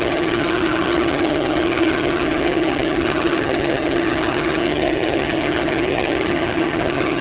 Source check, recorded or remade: remade